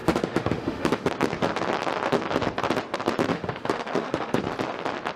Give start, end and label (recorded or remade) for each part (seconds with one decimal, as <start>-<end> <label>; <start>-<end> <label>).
0.0-1.1 remade; 1.1-3.3 recorded; 3.3-4.4 remade; 4.4-5.2 recorded